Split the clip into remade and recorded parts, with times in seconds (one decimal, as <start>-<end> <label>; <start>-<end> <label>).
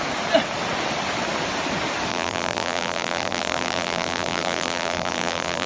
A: 0.0-2.1 recorded; 2.1-5.7 remade